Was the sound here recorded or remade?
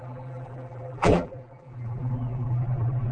remade